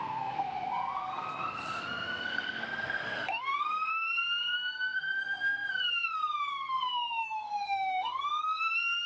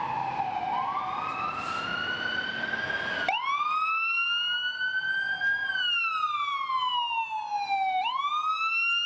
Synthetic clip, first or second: first